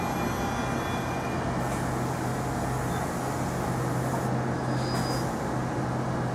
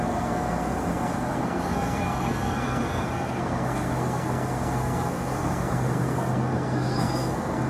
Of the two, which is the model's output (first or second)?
second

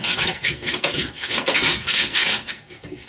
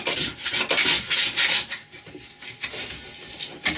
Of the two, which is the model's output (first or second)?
first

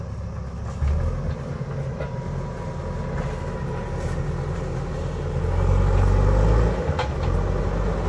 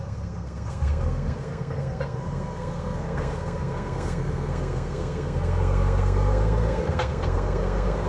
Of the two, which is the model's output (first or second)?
second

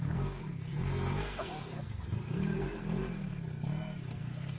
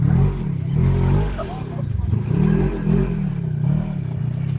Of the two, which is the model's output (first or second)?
first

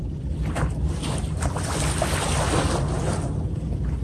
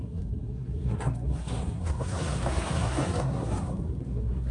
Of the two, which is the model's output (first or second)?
second